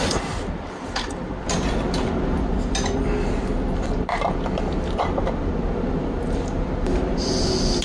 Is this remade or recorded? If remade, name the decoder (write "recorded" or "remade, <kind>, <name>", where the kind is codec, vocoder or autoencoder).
recorded